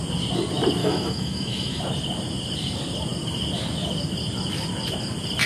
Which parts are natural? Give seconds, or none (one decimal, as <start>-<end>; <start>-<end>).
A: 0.0-0.8; 1.8-5.5